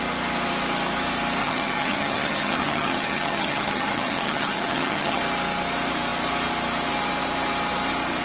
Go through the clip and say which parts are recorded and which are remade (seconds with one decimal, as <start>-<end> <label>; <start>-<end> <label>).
0.0-1.4 recorded; 1.4-5.2 remade; 5.2-8.2 recorded